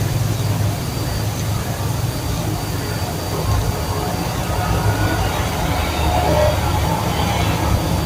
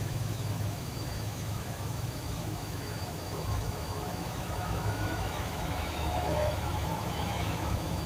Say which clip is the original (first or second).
first